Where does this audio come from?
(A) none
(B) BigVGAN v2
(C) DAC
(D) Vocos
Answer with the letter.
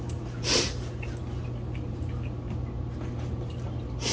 A